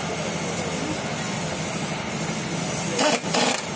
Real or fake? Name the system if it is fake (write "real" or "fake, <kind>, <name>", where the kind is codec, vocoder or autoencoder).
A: real